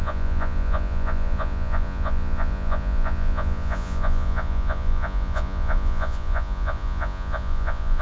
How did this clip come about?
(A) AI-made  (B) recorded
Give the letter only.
A